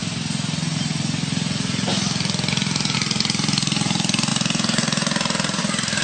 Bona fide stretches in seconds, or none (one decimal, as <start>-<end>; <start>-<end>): 0.0-6.0